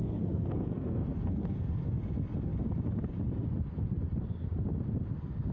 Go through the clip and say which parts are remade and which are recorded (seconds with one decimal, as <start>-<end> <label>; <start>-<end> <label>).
0.0-2.0 remade; 2.0-5.5 recorded